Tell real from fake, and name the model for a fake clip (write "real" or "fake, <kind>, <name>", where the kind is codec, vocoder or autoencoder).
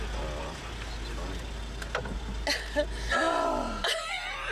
real